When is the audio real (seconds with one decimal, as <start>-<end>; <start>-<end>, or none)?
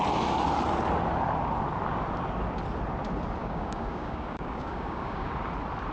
0.0-3.4; 5.3-5.9